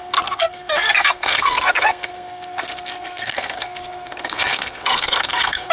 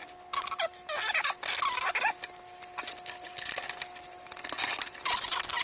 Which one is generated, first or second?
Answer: first